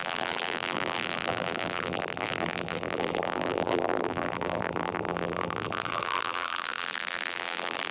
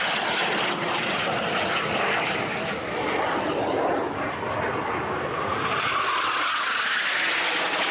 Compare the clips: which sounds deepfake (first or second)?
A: first